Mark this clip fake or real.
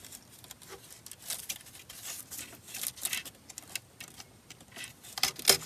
real